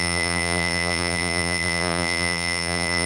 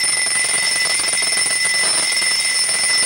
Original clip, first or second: second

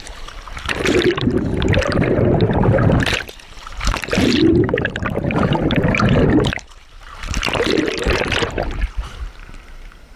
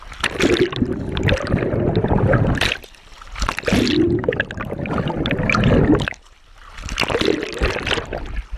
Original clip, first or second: second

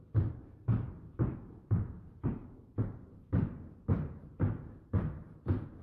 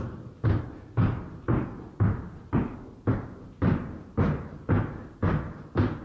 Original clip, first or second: second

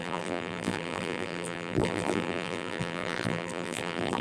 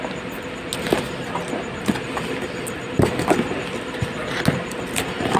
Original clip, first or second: second